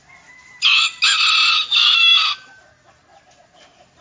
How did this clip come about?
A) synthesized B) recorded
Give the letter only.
B